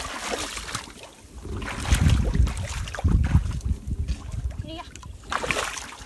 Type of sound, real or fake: real